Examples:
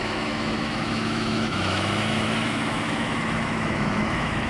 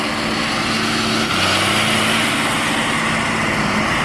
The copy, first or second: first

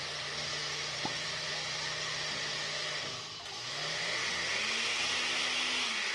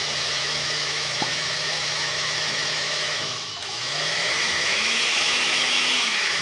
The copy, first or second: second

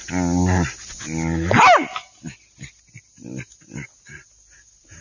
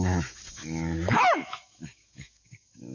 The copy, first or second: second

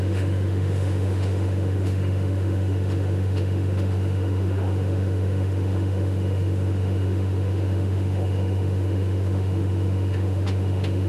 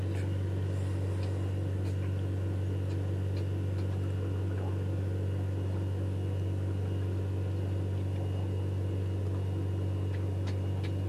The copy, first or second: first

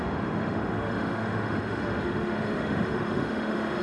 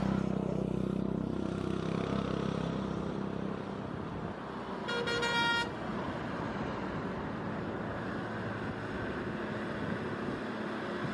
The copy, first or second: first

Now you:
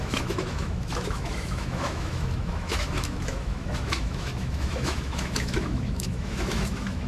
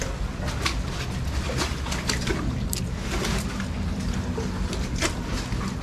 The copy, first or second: first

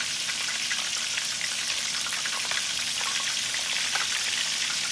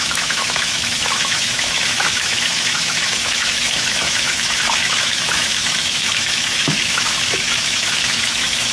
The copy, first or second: second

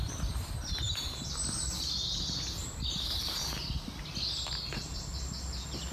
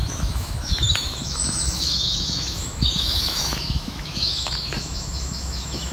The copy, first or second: second